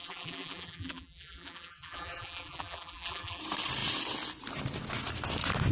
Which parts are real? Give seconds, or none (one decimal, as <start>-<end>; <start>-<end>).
3.4-5.7